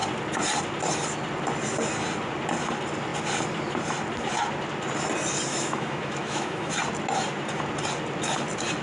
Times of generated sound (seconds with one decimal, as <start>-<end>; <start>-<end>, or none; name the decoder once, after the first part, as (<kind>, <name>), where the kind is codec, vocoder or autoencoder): 5.5-6.7 (autoencoder, DAC-VAE)